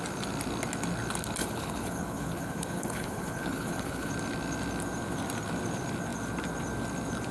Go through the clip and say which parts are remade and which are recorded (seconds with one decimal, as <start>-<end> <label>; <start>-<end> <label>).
0.0-1.4 recorded; 1.4-4.1 remade; 4.1-7.3 recorded